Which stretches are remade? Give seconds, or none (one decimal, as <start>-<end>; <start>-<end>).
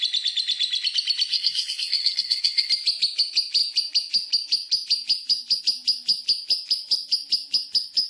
1.3-2.7